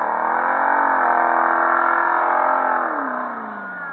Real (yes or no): yes